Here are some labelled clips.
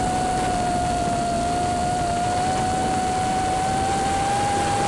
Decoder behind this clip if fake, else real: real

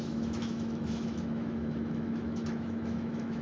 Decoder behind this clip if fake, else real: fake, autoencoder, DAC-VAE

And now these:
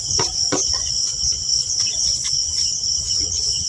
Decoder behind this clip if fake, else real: fake, vocoder, Vocos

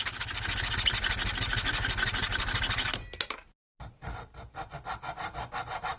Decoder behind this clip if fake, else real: real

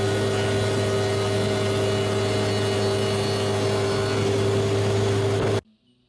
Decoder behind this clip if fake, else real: real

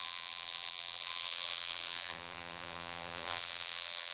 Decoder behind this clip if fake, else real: fake, vocoder, BigVGAN v2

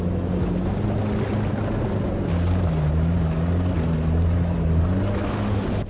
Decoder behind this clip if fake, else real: real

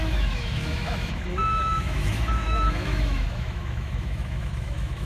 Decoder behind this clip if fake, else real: fake, autoencoder, DAC-VAE